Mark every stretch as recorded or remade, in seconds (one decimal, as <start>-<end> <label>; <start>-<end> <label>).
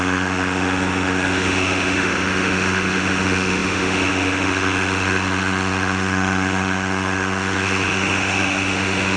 0.0-9.2 remade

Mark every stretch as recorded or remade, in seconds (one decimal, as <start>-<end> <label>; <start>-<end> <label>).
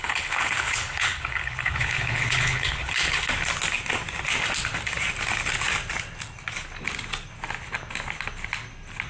0.0-3.3 remade; 3.3-9.1 recorded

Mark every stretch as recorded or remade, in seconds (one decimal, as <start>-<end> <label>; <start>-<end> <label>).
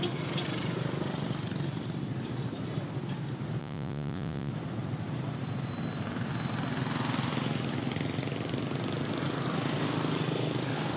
0.0-3.6 recorded; 3.6-4.5 remade; 4.5-11.0 recorded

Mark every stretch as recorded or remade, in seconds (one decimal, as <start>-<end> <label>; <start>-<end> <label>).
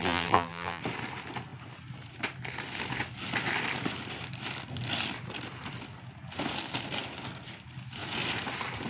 0.0-0.8 remade; 0.8-8.9 recorded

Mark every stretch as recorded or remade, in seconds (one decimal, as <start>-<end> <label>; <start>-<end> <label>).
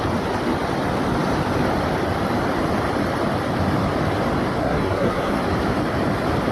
0.0-4.6 recorded; 4.6-5.4 remade; 5.4-6.5 recorded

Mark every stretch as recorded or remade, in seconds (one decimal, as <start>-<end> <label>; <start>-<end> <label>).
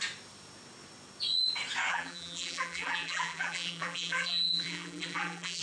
0.0-1.9 recorded; 1.9-5.6 remade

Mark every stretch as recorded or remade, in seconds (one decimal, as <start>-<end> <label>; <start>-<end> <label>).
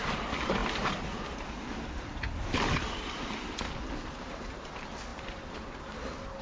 0.0-5.1 recorded; 5.1-5.8 remade; 5.8-6.4 recorded